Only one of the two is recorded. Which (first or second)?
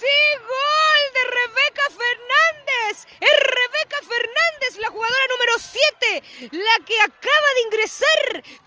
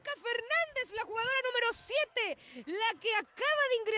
first